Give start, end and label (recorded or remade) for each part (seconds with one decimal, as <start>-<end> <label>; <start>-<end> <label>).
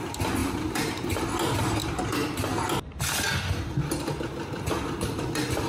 0.0-0.4 recorded; 0.4-1.2 remade; 1.2-5.7 recorded